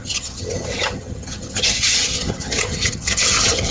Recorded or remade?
remade